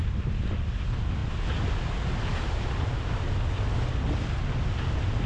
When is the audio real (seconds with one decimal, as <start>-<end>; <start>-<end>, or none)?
0.0-5.3